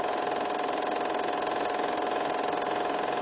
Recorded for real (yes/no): yes